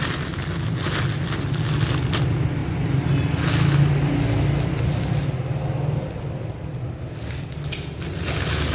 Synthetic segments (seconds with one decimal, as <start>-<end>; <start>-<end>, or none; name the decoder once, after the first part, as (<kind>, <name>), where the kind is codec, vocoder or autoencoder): none